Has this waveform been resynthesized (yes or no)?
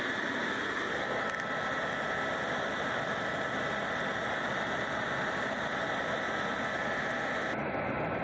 no